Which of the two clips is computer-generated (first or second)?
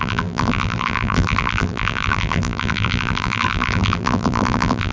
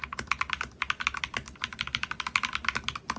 first